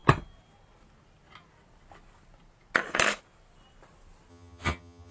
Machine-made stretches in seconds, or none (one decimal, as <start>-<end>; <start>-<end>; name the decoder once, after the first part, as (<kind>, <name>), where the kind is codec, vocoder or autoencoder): 4.3-5.1 (vocoder, HiFi-GAN)